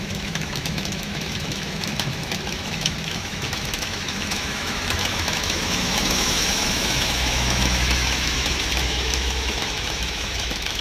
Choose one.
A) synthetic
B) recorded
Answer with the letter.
A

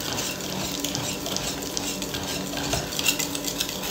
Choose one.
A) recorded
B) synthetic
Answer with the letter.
A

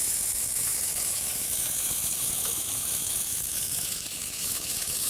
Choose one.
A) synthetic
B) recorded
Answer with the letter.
A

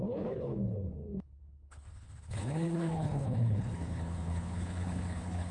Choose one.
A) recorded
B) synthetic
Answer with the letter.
B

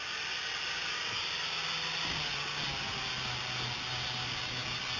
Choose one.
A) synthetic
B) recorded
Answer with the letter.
B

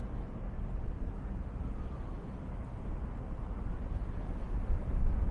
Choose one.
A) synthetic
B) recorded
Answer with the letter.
B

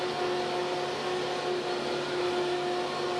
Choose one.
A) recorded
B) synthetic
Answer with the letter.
A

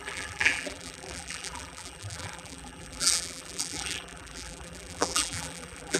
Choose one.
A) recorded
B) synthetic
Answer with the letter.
B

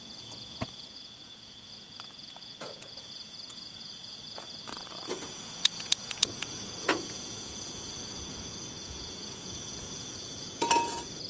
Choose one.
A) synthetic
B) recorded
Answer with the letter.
A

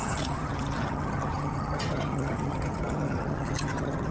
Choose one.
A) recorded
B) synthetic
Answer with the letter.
B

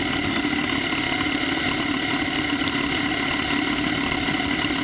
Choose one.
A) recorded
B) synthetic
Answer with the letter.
A